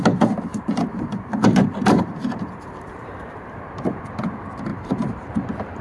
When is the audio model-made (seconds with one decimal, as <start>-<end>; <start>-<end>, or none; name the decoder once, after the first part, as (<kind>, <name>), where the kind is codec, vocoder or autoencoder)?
0.5-4.0 (vocoder, BigVGAN v2); 4.7-5.3

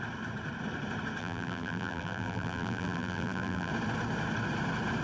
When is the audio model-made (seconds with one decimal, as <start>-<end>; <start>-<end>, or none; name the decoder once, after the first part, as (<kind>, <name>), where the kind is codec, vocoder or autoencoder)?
1.2-3.7 (vocoder, BigVGAN v2)

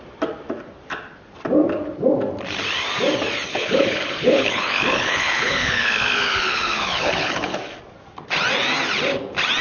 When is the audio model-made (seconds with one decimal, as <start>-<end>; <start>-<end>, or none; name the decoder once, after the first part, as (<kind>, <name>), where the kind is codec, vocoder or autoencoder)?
3.5-7.6 (codec, HILCodec)

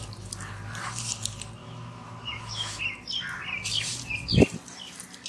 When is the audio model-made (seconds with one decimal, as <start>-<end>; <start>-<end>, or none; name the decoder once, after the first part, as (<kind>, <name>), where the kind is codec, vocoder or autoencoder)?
1.6-2.8 (autoencoder, DAC-VAE)

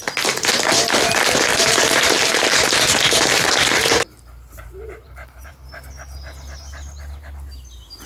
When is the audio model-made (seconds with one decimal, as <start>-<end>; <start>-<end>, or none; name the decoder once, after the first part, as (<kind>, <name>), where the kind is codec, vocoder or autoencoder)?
1.5-5.5 (vocoder, BigVGAN v2)

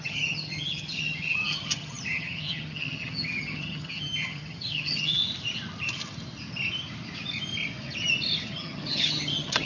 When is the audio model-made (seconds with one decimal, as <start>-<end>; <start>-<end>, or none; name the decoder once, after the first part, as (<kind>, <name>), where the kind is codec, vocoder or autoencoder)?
0.0-5.2 (vocoder, HiFi-GAN); 8.4-9.7